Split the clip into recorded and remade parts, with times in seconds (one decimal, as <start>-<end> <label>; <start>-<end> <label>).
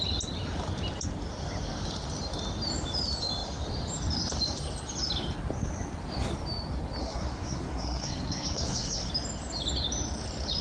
0.0-7.0 recorded; 7.0-9.1 remade; 9.1-10.6 recorded